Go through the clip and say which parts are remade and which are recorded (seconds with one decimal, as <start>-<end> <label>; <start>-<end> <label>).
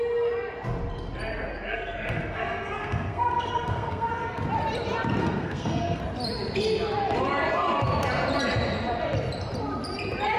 0.0-1.5 recorded; 1.5-4.1 remade; 4.1-5.2 recorded; 5.2-6.0 remade; 6.0-10.4 recorded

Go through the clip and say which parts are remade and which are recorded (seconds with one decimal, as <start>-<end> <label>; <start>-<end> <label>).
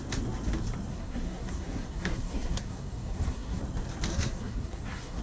0.0-0.9 recorded; 0.9-3.6 remade; 3.6-4.1 recorded; 4.1-5.2 remade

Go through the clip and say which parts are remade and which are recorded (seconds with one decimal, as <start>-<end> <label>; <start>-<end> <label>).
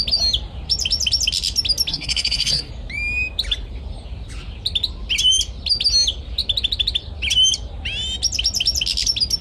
0.0-1.9 recorded; 1.9-2.7 remade; 2.7-9.4 recorded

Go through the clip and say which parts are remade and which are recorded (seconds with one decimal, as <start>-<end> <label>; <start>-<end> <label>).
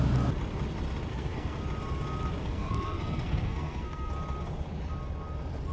0.0-1.1 recorded; 1.1-1.6 remade; 1.6-2.4 recorded; 2.4-4.1 remade; 4.1-5.7 recorded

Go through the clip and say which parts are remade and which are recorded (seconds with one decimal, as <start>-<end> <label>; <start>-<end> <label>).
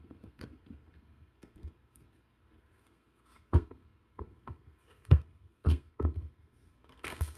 0.0-7.4 remade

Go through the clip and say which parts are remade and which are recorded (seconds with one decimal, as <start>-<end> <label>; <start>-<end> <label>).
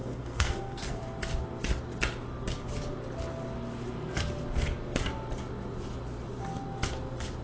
0.0-1.0 remade; 1.0-7.4 recorded